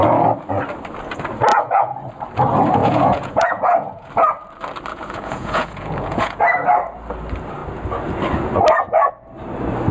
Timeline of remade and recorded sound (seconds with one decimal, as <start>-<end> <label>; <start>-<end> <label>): 0.0-1.5 recorded; 1.5-2.1 remade; 2.1-2.8 recorded; 2.8-4.1 remade; 4.1-4.9 recorded; 4.9-6.4 remade; 6.4-9.9 recorded